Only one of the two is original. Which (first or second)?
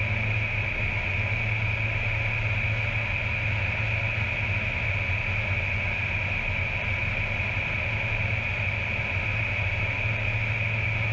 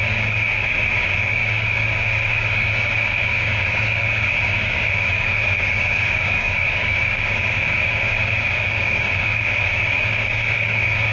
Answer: first